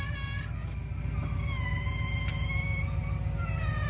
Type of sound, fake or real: real